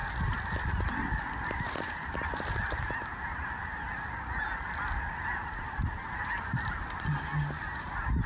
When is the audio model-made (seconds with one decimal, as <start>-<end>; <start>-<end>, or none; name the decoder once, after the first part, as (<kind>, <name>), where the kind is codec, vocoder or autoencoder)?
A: none